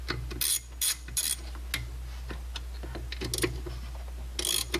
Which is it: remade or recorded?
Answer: recorded